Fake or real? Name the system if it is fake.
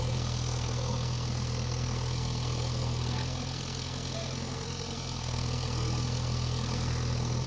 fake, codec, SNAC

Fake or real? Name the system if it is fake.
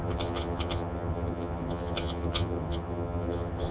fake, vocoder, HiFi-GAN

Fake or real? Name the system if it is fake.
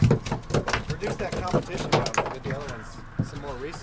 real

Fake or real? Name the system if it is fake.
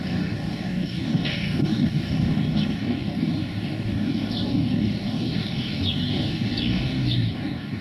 fake, codec, DAC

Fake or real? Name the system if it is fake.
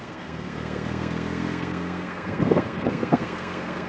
fake, codec, SNAC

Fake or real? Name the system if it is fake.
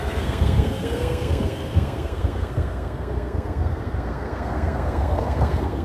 fake, codec, SNAC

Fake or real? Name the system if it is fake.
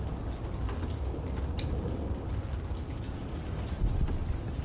real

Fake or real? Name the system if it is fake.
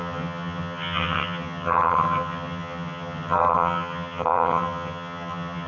fake, vocoder, HiFi-GAN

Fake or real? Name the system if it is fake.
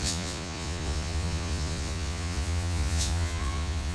fake, vocoder, Vocos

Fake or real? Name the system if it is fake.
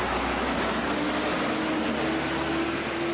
real